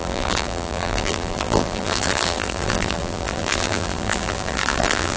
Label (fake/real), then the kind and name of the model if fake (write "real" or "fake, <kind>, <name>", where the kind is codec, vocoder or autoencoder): fake, vocoder, BigVGAN v2